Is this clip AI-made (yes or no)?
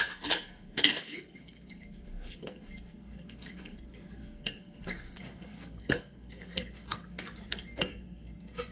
yes